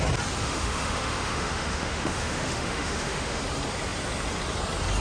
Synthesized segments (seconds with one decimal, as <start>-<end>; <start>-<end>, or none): 0.4-3.4